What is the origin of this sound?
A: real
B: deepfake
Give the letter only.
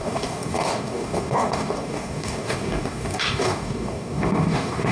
B